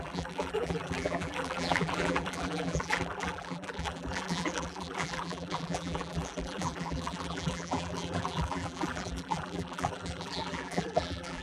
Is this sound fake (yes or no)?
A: yes